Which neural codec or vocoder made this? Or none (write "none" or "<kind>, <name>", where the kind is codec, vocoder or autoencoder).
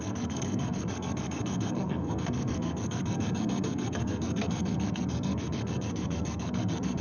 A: codec, SNAC